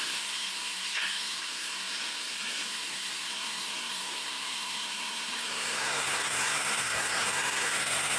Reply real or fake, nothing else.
fake